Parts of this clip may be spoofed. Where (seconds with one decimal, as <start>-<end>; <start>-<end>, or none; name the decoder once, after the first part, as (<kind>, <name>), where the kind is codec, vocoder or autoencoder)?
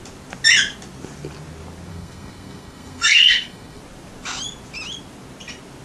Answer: 1.9-3.8 (codec, SNAC)